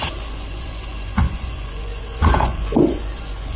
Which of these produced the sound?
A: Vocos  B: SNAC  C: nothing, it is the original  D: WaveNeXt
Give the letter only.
A